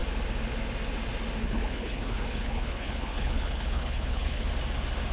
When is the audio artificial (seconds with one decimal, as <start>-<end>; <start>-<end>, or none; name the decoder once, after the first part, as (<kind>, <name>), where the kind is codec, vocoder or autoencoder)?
1.4-4.5 (codec, HILCodec)